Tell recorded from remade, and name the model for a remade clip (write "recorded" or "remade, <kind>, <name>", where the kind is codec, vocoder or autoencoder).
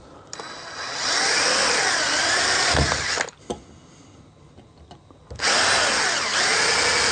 recorded